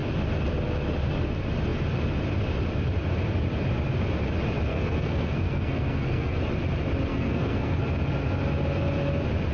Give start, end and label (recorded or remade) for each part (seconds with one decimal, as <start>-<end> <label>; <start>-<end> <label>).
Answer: 0.0-4.7 recorded; 4.7-6.4 remade; 6.4-7.1 recorded; 7.1-7.8 remade; 7.8-9.5 recorded